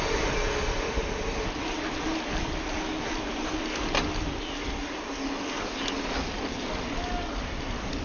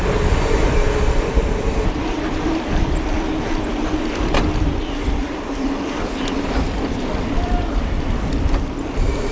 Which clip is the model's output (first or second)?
second